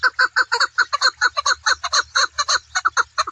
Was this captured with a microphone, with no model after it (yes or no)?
yes